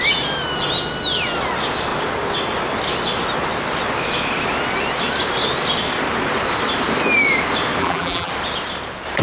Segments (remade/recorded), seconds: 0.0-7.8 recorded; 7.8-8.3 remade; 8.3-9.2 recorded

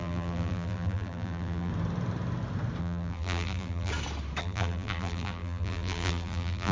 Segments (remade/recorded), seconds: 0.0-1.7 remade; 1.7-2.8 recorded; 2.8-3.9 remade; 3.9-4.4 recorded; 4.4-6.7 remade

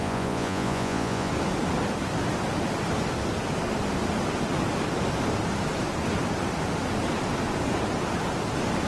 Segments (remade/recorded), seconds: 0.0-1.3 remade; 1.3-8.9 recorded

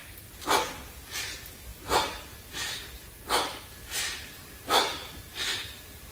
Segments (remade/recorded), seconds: 0.0-6.1 recorded

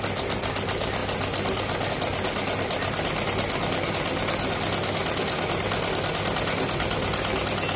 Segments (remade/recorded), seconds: 0.0-7.8 recorded

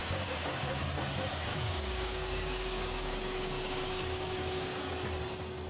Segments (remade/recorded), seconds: 0.0-0.8 remade; 0.8-1.5 recorded; 1.5-4.9 remade; 4.9-5.7 recorded

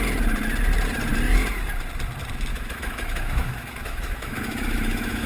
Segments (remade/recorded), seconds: 0.0-2.5 recorded; 2.5-5.3 remade

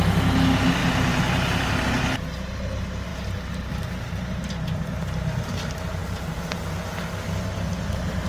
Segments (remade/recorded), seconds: 0.0-0.8 recorded; 0.8-1.8 remade; 1.8-3.1 recorded; 3.1-4.1 remade; 4.1-6.0 recorded; 6.0-6.6 remade; 6.6-8.3 recorded